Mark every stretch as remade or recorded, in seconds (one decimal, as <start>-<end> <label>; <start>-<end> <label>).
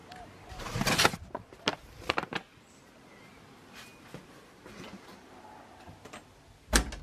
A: 0.0-7.0 recorded